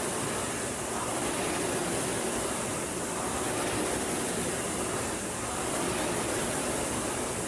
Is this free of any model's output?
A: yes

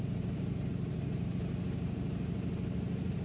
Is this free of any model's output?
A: no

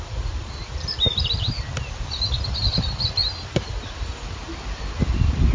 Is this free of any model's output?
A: yes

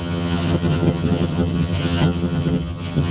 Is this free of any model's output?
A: no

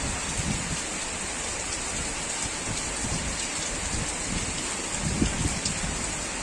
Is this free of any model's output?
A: yes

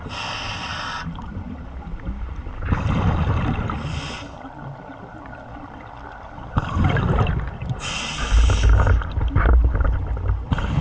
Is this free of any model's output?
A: yes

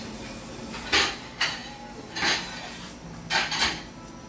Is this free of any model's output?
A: yes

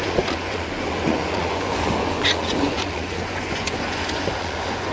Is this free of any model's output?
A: no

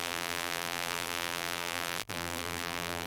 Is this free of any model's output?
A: no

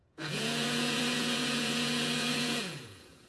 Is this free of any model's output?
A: no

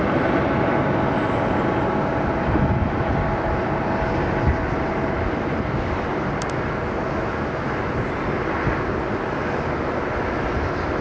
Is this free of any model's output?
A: yes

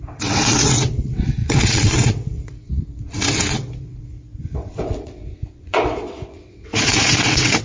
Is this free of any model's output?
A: no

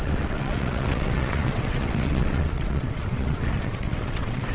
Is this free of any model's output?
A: no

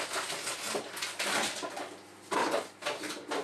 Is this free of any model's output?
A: yes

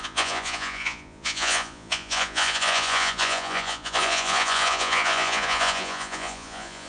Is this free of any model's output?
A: no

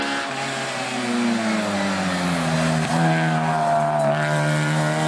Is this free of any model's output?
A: yes